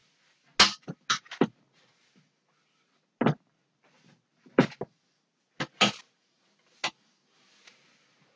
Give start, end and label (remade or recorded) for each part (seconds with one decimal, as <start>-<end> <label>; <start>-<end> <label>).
0.0-8.4 recorded